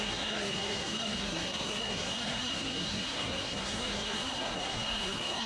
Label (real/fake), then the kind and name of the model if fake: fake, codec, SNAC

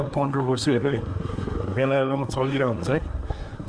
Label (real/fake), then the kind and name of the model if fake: fake, codec, SNAC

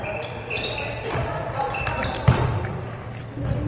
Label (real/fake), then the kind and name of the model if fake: real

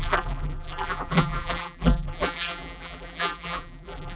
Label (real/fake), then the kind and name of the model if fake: fake, vocoder, BigVGAN v2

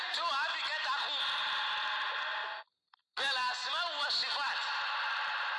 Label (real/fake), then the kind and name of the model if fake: real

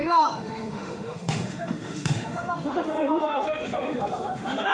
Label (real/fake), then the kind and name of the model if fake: fake, autoencoder, DAC-VAE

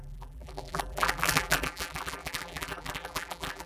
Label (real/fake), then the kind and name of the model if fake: fake, vocoder, BigVGAN v2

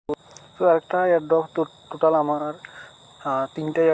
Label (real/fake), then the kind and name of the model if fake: real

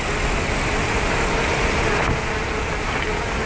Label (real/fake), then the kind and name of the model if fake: real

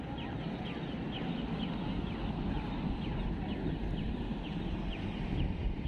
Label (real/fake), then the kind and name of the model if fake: real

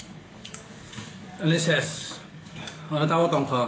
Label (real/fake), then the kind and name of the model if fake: fake, codec, DAC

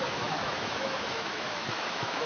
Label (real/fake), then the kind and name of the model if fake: fake, autoencoder, DAC-VAE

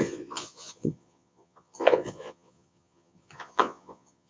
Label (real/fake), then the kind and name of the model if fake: fake, vocoder, Vocos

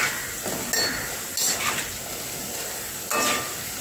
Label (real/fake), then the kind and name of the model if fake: real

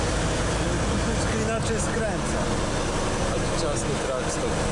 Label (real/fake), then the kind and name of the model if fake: real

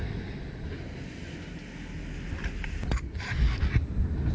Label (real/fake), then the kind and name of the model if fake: real